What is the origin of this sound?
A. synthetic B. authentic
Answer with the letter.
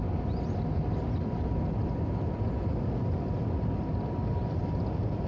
B